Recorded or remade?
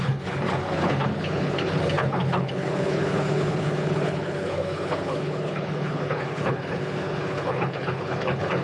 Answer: remade